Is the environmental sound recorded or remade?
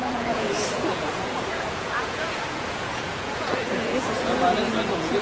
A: remade